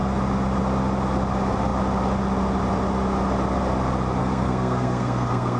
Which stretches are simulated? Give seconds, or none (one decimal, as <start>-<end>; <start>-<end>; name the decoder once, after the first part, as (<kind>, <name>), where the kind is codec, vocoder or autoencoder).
4.2-5.6 (codec, SNAC)